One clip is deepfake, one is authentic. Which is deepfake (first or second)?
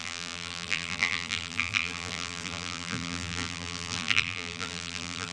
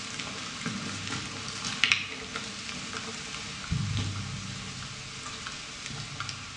first